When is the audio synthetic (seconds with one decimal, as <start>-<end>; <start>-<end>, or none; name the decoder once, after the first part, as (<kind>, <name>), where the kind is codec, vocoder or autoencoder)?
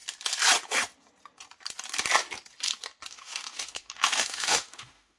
3.1-5.2 (autoencoder, DAC-VAE)